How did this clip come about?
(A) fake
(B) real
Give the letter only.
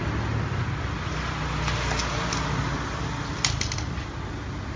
B